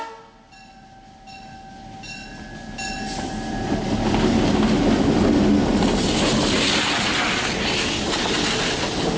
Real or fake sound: real